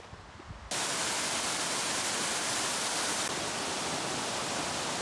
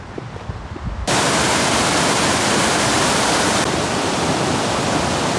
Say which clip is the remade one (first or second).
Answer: second